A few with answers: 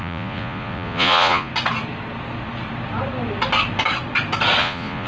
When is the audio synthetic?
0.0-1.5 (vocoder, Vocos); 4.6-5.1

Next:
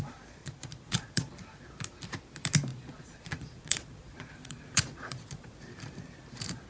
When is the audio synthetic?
0.4-1.3 (vocoder, Vocos); 2.7-5.5

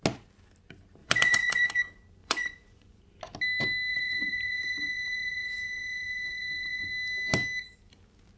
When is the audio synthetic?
1.0-1.8 (vocoder, Vocos); 2.2-3.0; 3.9-6.9

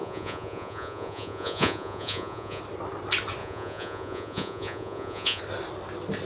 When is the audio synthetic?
0.0-2.6 (vocoder, Vocos); 3.4-5.4

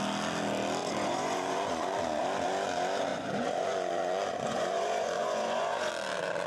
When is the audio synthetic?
0.8-2.0 (vocoder, Vocos); 3.1-5.9

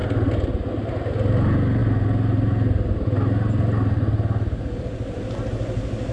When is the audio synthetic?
none

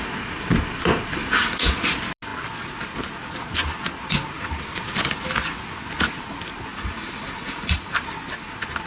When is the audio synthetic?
1.2-1.8 (vocoder, Vocos); 6.7-7.9

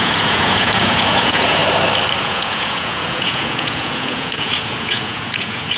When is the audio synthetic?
0.0-1.6 (vocoder, Vocos); 2.2-5.8